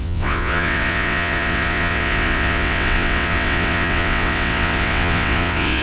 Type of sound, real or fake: fake